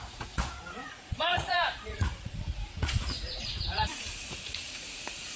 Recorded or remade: remade